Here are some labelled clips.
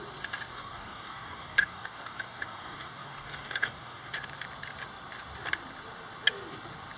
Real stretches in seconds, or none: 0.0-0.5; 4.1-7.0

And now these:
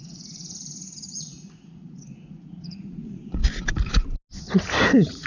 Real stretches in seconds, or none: 3.4-4.8

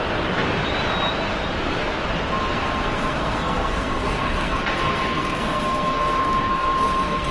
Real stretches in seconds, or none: 0.0-2.5

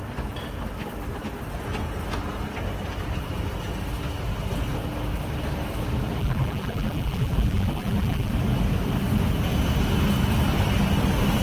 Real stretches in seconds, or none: 0.0-6.2; 8.3-11.4

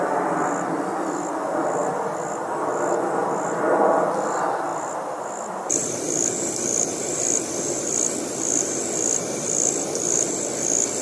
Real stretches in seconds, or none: 0.0-11.0

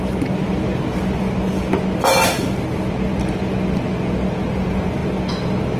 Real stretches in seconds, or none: 0.0-5.8

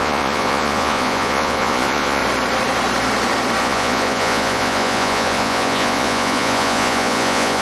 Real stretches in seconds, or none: 2.2-3.6